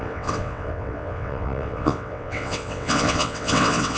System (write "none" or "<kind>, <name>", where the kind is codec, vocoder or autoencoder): vocoder, WaveNeXt